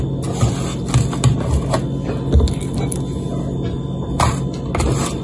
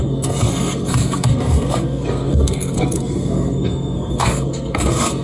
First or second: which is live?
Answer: first